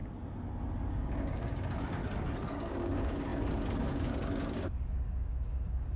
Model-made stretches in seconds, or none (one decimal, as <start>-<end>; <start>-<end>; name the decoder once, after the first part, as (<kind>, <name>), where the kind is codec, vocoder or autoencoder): 0.9-2.0 (codec, DAC); 2.5-6.0